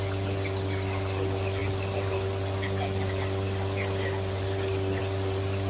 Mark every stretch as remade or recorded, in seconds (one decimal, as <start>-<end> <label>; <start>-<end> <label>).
0.0-5.7 recorded